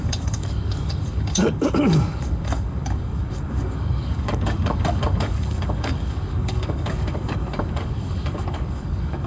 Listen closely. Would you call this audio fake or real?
fake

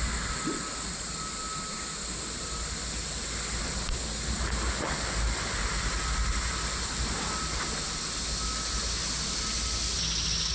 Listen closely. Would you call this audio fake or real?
real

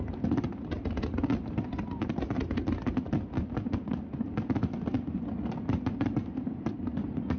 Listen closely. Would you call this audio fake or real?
real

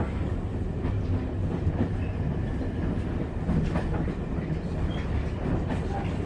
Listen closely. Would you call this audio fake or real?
real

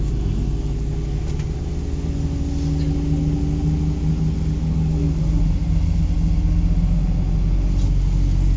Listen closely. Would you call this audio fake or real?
real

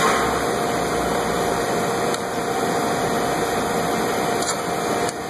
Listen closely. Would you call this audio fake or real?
real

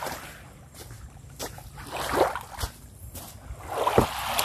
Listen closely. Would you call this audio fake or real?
real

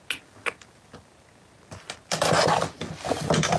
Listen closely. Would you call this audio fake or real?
real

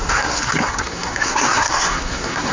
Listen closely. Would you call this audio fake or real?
fake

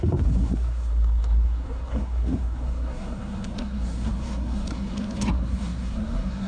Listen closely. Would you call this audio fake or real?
fake